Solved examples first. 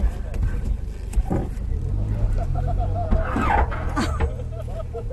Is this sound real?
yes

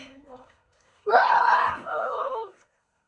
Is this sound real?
no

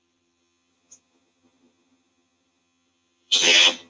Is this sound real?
no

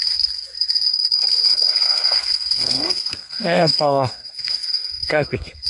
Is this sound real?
no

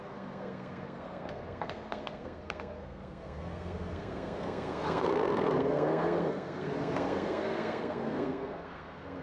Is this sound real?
no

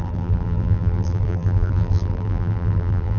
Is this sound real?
no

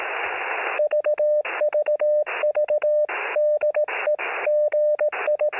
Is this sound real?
yes